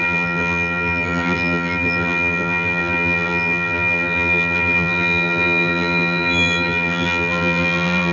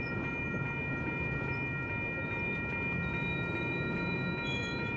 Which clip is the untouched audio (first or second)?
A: second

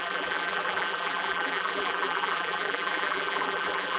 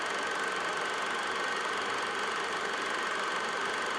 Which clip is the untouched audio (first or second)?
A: second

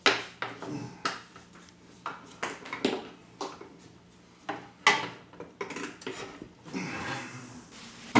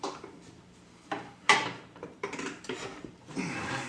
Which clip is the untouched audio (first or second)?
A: first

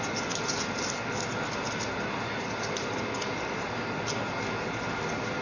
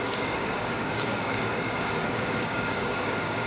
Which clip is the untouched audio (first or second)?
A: first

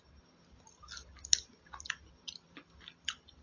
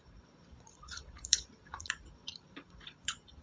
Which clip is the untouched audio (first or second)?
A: first